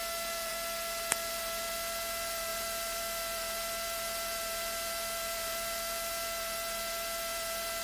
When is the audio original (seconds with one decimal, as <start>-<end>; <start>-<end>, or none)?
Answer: 0.0-2.5; 3.0-7.8